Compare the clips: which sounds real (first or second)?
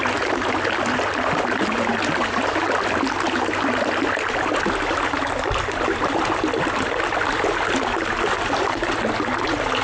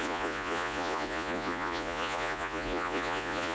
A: first